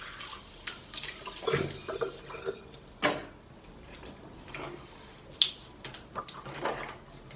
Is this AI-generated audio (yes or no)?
no